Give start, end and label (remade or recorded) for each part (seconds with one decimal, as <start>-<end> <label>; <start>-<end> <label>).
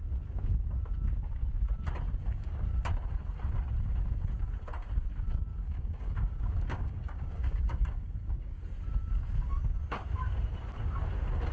0.0-2.2 recorded; 2.2-2.7 remade; 2.7-5.5 recorded; 5.5-8.6 remade; 8.6-11.5 recorded